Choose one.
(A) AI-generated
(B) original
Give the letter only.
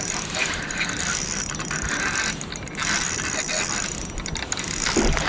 B